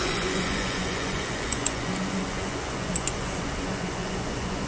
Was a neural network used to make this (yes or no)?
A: yes